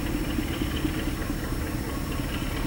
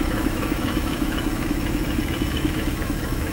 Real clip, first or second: first